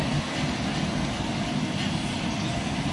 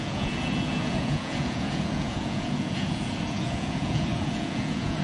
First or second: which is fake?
second